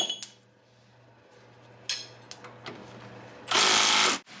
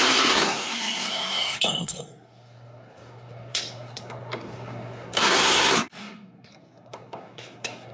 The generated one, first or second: second